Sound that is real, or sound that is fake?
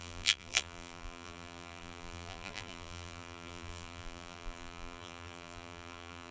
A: fake